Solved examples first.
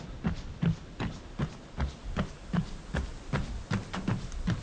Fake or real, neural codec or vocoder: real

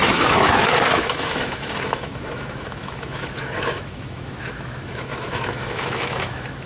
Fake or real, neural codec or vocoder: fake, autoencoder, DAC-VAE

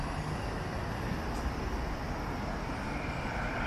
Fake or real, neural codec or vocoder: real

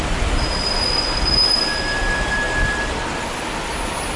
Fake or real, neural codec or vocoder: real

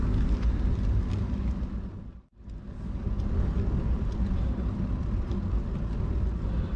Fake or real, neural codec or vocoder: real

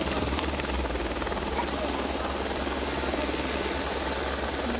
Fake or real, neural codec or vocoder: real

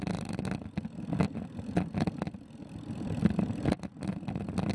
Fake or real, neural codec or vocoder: real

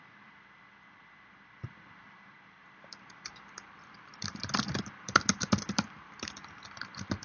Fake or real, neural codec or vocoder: fake, vocoder, BigVGAN v2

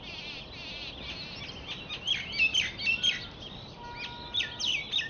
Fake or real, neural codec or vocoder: real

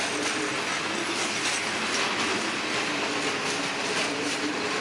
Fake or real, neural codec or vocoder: real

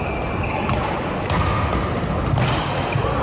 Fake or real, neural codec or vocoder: real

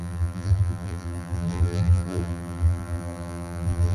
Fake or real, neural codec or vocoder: fake, vocoder, BigVGAN v2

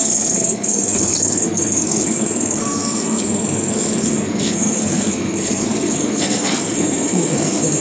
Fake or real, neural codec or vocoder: fake, codec, SNAC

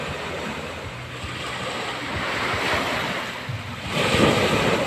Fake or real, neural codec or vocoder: real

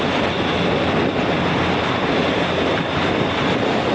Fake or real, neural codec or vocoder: real